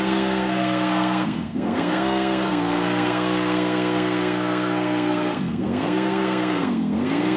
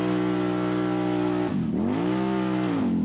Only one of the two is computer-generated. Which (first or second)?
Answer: first